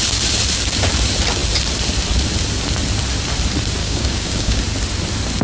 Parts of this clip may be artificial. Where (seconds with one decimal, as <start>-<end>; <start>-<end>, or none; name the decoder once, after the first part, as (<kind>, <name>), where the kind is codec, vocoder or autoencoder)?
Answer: 3.8-4.6 (codec, DAC)